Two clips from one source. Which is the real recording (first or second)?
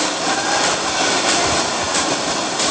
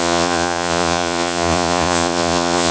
first